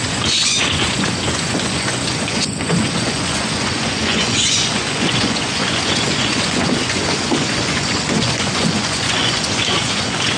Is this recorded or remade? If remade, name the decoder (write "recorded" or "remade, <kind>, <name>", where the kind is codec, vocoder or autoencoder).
remade, vocoder, Vocos